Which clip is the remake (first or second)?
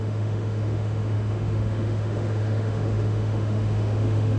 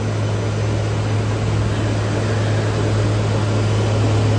first